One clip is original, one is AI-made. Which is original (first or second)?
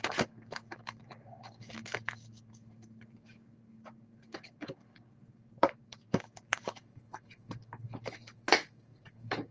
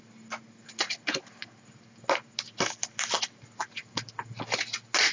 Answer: second